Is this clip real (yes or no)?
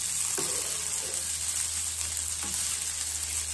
yes